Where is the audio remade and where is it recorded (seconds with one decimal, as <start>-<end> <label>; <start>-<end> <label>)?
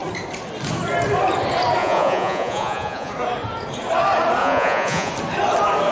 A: 0.0-1.8 recorded; 1.8-3.1 remade; 3.1-4.4 recorded; 4.4-5.1 remade; 5.1-5.9 recorded